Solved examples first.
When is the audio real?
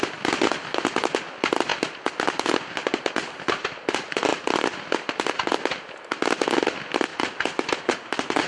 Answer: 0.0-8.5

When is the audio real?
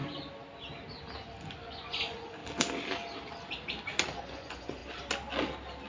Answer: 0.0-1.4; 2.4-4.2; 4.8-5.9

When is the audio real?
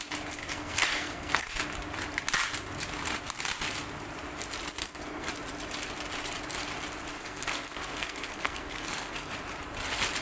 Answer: 0.0-0.4; 1.6-4.8; 5.3-7.1; 9.3-10.2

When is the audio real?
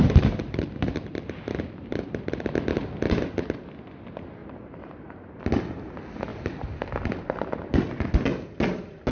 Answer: 2.5-4.4; 5.4-6.3; 7.5-9.1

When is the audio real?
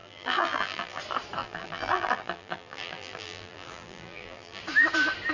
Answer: 1.0-1.4; 4.6-5.3